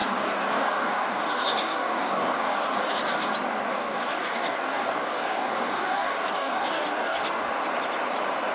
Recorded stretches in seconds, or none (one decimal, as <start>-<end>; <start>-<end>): 3.3-3.7; 7.5-8.5